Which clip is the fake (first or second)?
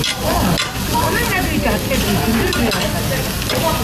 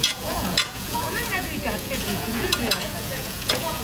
second